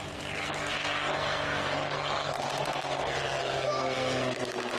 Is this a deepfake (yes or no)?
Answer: yes